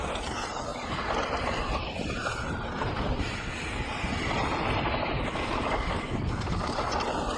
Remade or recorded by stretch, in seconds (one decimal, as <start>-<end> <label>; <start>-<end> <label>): 0.0-7.4 recorded

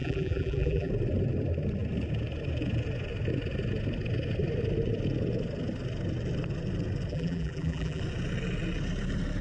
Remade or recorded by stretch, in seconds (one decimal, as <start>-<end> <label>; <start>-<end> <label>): 0.0-0.9 remade; 0.9-7.1 recorded; 7.1-8.0 remade; 8.0-9.4 recorded

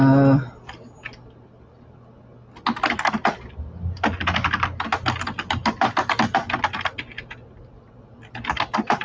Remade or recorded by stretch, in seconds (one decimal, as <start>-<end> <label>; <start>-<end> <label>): 0.0-9.0 recorded

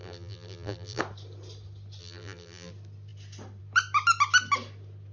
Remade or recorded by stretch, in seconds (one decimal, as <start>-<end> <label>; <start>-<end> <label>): 0.0-1.0 remade; 1.0-2.0 recorded; 2.0-2.7 remade; 2.7-5.1 recorded

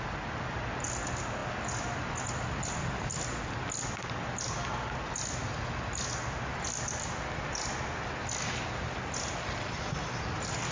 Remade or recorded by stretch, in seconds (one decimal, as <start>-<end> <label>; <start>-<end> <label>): 0.0-10.7 recorded

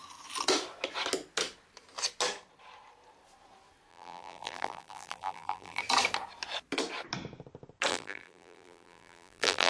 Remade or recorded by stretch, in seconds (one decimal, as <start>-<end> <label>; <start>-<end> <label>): 0.0-3.9 recorded; 3.9-5.8 remade; 5.8-7.9 recorded; 7.9-9.7 remade

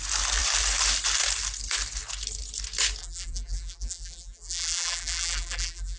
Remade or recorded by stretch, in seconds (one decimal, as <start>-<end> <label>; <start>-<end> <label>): 0.0-3.0 recorded; 3.0-6.0 remade

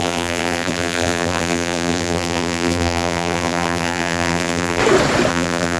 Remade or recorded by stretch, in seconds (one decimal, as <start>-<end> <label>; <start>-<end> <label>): 0.0-4.8 remade; 4.8-5.3 recorded; 5.3-5.8 remade